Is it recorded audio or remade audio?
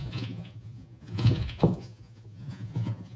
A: remade